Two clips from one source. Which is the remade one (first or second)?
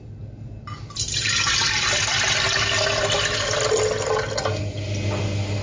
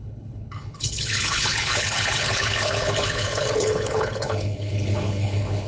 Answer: second